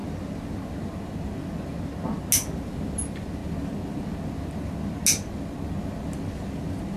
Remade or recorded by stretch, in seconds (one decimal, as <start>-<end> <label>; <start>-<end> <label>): 0.0-7.0 recorded